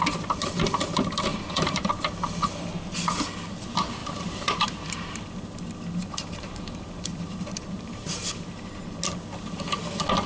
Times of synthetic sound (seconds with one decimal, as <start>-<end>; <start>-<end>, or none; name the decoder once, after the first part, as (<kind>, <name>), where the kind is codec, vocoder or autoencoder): 1.3-1.9 (vocoder, BigVGAN v2); 4.0-5.2; 6.0-8.7